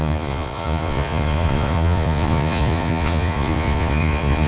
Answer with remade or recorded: remade